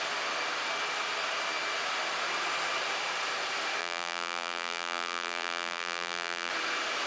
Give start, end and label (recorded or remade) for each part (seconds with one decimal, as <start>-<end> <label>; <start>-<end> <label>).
0.0-3.8 recorded; 3.8-6.5 remade; 6.5-7.1 recorded